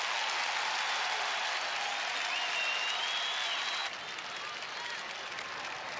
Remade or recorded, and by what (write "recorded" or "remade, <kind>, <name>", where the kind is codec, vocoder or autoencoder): recorded